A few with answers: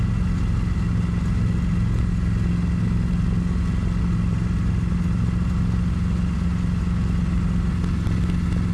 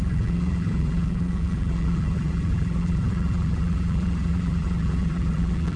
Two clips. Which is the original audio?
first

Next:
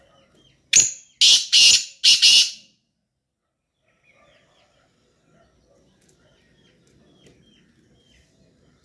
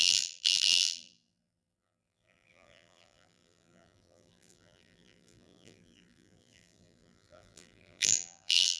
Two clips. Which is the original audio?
first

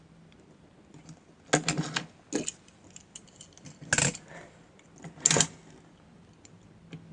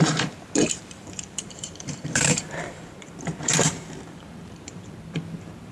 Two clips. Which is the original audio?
first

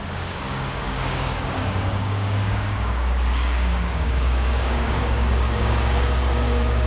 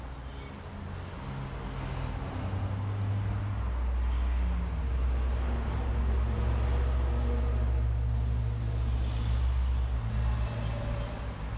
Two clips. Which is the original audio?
second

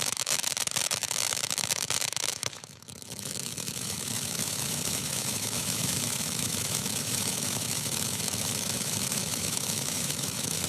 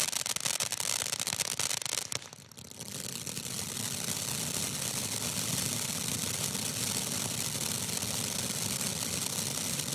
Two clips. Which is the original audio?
second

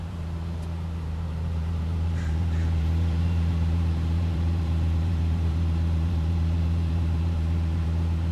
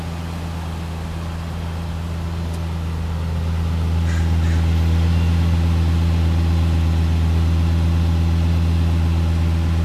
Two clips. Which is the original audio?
second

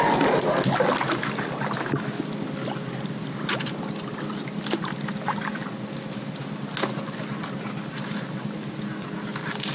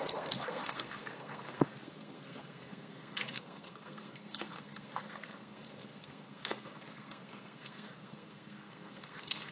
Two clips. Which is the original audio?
first